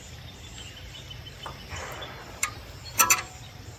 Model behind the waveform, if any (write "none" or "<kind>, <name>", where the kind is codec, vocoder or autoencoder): vocoder, BigVGAN v2